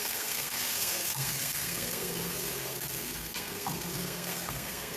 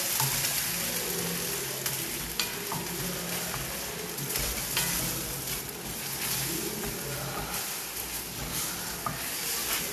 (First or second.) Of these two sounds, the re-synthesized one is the first